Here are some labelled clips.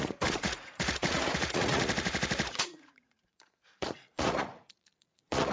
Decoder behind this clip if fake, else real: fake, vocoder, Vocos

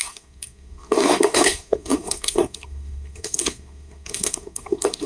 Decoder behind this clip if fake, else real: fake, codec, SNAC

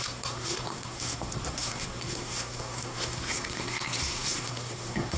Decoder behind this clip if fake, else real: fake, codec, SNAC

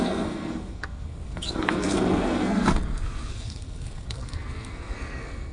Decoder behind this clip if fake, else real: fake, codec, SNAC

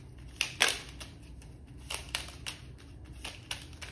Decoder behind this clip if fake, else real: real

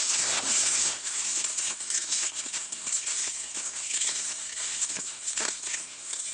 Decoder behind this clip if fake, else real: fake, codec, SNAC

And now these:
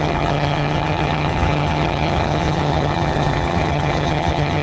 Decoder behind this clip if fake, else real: fake, vocoder, HiFi-GAN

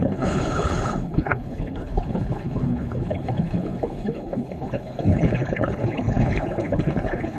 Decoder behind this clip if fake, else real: fake, codec, HILCodec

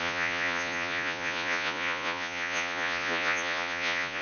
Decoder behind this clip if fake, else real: fake, vocoder, Vocos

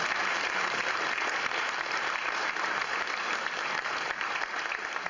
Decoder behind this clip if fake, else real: fake, vocoder, BigVGAN v2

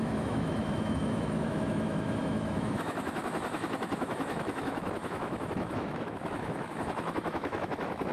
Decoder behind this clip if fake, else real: fake, autoencoder, DAC-VAE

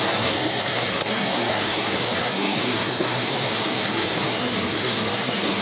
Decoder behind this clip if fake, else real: fake, codec, SNAC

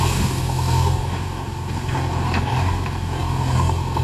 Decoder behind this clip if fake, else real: fake, codec, DAC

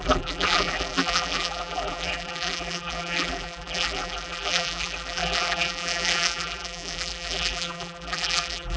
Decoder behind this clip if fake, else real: fake, vocoder, BigVGAN v2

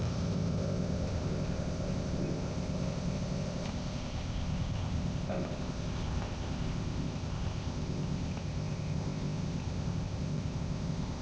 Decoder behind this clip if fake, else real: fake, codec, ZipCodec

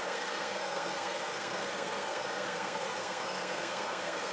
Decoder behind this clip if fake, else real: fake, codec, SNAC